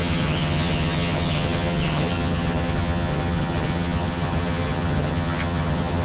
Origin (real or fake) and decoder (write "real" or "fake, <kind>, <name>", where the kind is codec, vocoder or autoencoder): fake, vocoder, HiFi-GAN